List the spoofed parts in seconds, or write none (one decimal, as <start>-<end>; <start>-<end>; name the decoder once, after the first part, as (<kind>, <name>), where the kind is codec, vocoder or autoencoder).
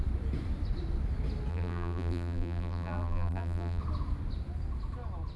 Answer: 1.5-3.8 (vocoder, BigVGAN v2)